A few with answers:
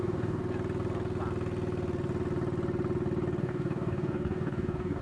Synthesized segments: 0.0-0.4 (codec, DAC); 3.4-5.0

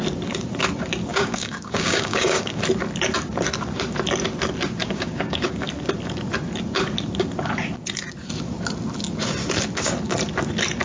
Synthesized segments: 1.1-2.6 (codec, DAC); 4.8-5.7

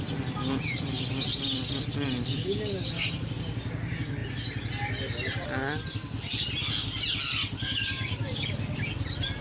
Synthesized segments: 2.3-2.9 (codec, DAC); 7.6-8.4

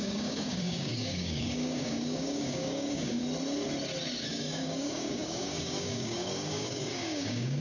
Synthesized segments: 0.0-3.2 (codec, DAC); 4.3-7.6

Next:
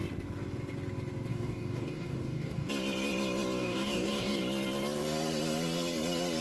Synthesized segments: 1.3-2.7 (codec, DAC); 3.6-4.4

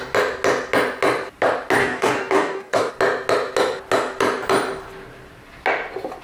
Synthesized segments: 1.8-2.9 (codec, DAC)